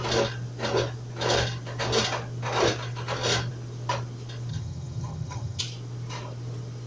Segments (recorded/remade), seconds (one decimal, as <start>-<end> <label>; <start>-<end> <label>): 0.0-4.5 recorded; 4.5-5.6 remade; 5.6-6.9 recorded